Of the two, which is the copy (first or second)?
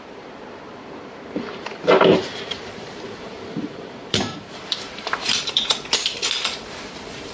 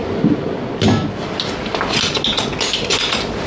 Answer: first